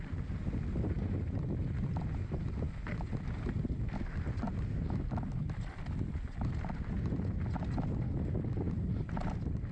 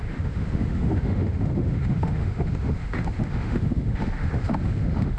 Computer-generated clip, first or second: second